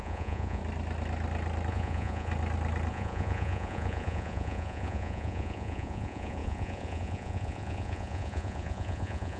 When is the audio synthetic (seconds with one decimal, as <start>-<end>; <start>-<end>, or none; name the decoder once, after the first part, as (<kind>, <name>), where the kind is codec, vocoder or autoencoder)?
0.0-0.6 (vocoder, Vocos); 1.7-2.3; 2.9-9.4

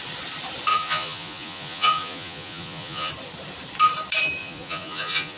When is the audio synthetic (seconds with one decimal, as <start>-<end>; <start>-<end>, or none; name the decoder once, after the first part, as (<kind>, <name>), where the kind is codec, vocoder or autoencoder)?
0.7-3.1 (vocoder, Vocos); 4.4-5.4